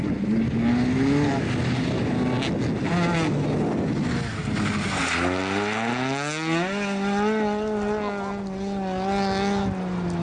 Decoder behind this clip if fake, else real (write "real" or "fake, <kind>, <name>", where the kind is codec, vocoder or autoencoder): real